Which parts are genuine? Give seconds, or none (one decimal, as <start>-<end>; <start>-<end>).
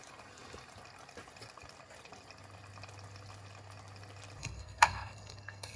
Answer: 0.0-4.4